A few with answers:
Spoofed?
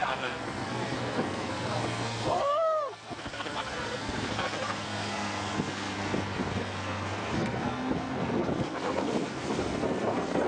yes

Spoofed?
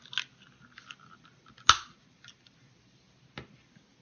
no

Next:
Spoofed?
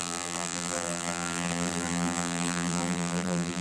yes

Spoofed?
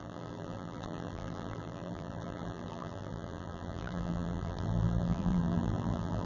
yes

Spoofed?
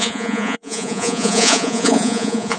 yes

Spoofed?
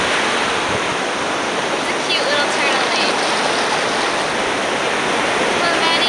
no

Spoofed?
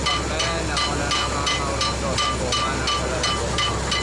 no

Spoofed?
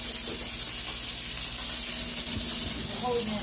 no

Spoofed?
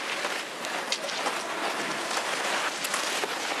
no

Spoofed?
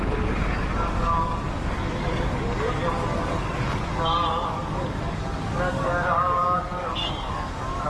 yes